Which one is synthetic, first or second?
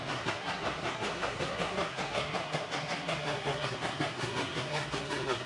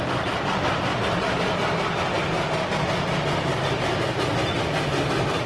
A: first